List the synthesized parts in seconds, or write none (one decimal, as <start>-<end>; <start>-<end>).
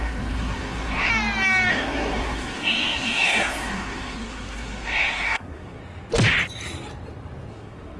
0.0-1.1; 1.7-5.8; 7.5-8.0